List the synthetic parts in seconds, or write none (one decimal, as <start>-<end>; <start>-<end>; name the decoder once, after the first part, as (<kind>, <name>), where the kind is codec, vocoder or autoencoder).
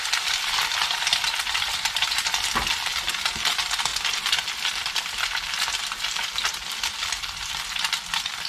0.0-3.9 (vocoder, BigVGAN v2); 6.7-8.5